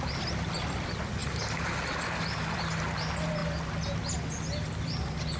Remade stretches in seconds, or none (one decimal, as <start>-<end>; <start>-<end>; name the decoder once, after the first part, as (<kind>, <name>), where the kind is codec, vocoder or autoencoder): none